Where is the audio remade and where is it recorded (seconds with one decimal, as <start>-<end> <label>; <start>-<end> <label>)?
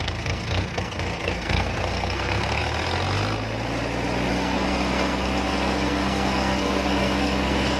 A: 0.0-2.6 remade; 2.6-4.3 recorded; 4.3-7.8 remade